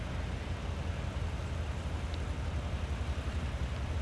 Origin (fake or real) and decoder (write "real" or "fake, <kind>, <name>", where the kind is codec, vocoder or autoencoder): real